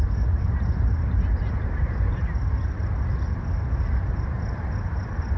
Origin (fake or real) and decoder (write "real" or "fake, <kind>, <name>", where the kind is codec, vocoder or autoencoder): real